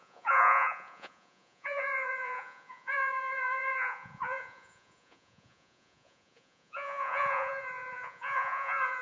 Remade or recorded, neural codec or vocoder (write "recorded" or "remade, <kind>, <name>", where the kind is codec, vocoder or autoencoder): remade, vocoder, Vocos